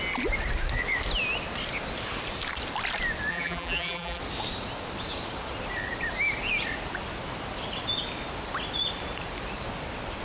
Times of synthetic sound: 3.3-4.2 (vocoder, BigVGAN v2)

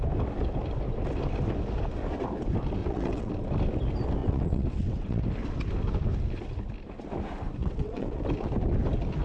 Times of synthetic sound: 2.8-3.3 (vocoder, WaveNeXt); 4.2-5.2; 7.6-8.2

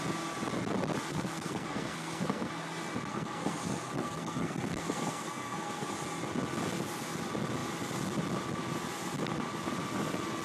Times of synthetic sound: 1.1-2.5 (codec, SNAC); 3.1-5.9

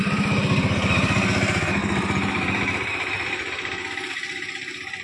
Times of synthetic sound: 1.8-5.0 (vocoder, BigVGAN v2)

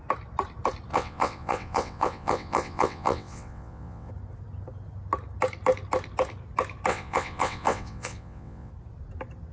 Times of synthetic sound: 0.9-4.1 (vocoder, WaveNeXt); 6.9-8.7

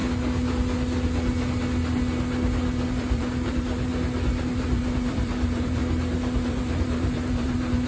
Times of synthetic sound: 2.9-3.9 (vocoder, BigVGAN v2); 4.4-5.8; 6.4-7.9

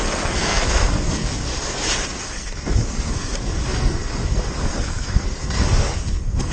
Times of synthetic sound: 0.0-1.5 (codec, SNAC); 2.2-6.5